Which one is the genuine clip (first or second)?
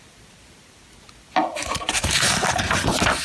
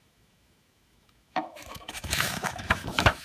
first